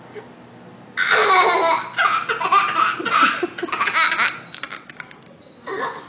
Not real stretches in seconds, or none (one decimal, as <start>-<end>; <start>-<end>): none